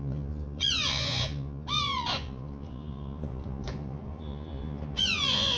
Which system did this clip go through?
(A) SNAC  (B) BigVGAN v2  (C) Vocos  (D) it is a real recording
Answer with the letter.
C